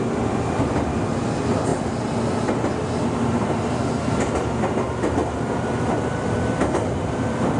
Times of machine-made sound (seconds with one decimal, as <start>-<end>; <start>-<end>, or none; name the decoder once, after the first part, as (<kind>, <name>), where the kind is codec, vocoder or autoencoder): none